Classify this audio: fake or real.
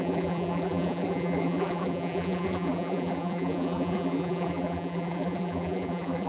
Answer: fake